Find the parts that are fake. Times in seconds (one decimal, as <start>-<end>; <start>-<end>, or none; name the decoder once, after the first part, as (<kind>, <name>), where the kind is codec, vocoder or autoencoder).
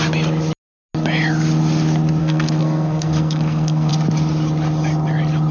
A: 2.2-3.9 (codec, SNAC)